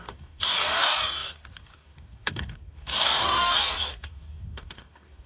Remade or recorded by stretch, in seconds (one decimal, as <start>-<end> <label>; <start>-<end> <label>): 0.0-5.3 remade